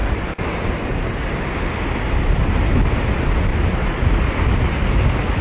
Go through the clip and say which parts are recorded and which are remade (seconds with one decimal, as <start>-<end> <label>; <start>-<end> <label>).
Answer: 0.0-1.5 remade; 1.5-3.5 recorded; 3.5-4.3 remade; 4.3-5.4 recorded